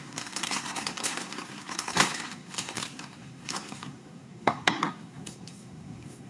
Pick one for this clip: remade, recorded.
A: remade